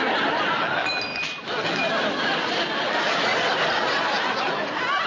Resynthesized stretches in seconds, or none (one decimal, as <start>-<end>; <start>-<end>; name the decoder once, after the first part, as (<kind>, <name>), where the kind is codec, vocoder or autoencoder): 3.3-4.2 (vocoder, BigVGAN v2)